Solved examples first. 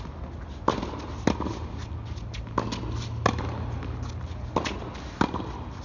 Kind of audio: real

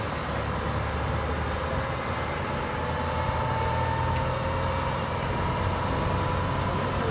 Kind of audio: real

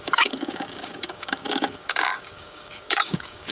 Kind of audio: fake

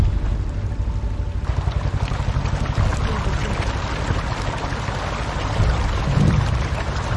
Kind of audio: real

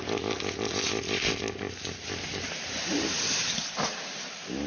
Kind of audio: real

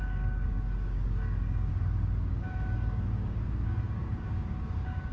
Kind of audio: fake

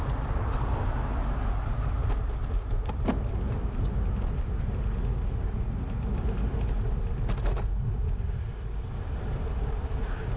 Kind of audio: real